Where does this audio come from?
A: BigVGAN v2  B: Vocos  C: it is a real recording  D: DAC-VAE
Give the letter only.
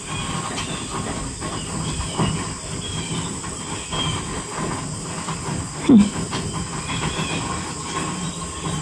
C